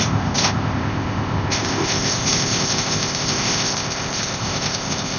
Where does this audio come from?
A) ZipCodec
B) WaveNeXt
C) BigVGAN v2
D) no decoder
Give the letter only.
A